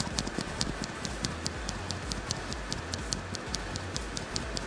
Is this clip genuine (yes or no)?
yes